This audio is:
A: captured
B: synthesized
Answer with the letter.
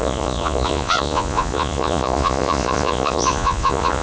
B